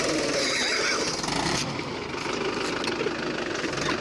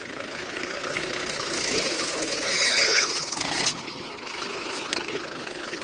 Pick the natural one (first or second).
first